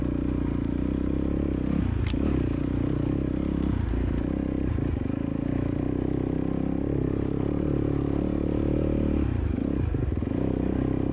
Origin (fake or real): real